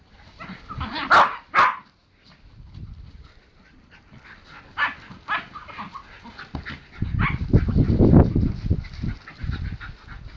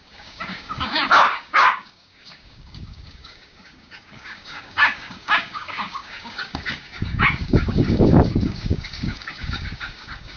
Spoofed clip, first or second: second